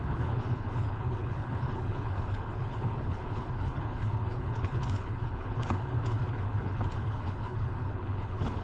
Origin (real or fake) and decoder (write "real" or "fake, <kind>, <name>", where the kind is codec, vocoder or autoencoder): fake, codec, HILCodec